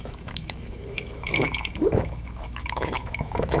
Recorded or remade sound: remade